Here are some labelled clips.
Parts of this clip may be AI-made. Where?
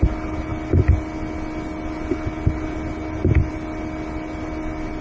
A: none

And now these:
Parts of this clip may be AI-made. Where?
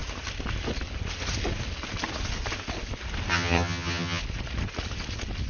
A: 3.3-4.2 (vocoder, HiFi-GAN)